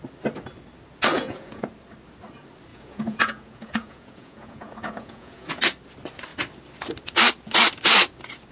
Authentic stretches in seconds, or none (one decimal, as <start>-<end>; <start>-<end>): 0.0-1.1; 1.7-2.7; 5.6-8.5